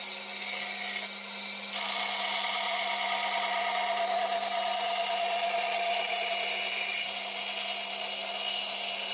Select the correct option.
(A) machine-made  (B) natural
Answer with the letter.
B